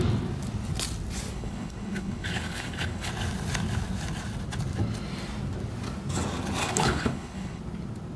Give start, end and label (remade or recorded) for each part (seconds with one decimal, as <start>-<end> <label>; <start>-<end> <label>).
0.0-1.3 recorded; 1.3-3.1 remade; 3.1-6.6 recorded; 6.6-7.6 remade; 7.6-8.2 recorded